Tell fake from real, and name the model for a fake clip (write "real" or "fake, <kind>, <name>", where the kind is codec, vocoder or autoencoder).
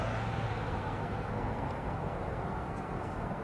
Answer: fake, codec, SNAC